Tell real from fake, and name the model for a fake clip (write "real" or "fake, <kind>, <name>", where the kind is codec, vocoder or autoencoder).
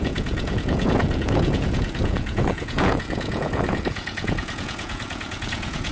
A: fake, vocoder, Vocos